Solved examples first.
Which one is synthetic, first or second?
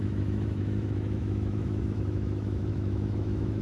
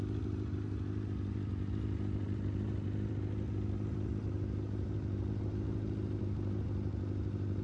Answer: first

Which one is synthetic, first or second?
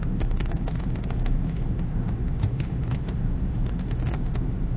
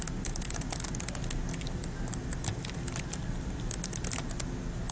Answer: first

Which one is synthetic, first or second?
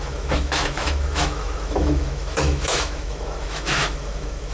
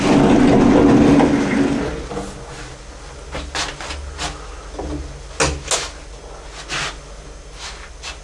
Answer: first